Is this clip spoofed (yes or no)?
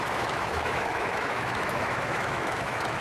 yes